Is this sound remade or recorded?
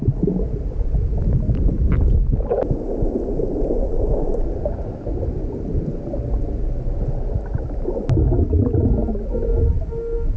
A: recorded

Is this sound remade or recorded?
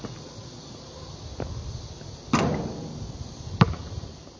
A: recorded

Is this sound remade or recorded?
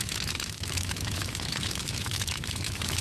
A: remade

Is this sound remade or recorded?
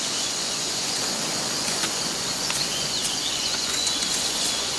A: remade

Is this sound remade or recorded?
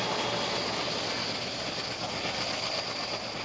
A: recorded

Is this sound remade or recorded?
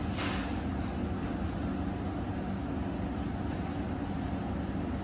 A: recorded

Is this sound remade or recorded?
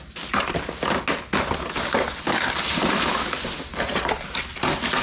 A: recorded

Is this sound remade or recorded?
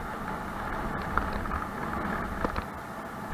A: recorded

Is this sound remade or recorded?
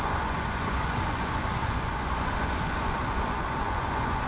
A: remade